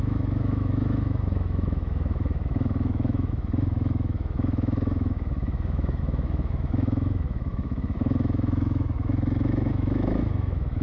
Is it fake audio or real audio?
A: fake